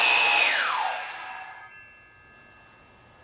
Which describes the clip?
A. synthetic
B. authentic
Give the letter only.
B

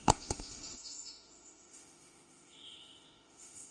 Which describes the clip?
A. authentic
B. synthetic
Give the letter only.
B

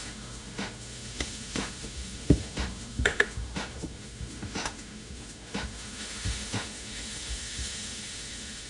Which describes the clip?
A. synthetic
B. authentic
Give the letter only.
A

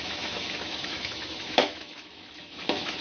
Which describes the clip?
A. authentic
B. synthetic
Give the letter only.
B